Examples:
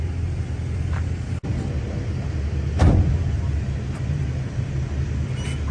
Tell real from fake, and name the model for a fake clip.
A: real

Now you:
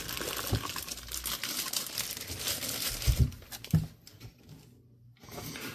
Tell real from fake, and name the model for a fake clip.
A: real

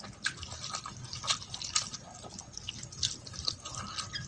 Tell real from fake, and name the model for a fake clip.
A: real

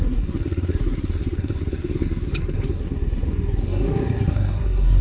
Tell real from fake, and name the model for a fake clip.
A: fake, codec, SNAC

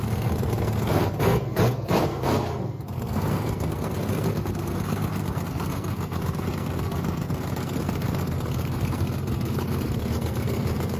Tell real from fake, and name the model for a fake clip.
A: fake, codec, SNAC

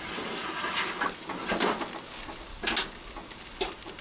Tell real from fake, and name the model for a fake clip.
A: real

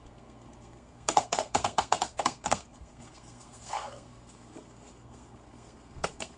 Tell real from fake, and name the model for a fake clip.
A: fake, codec, SNAC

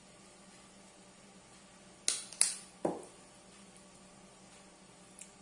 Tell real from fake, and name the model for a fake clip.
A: real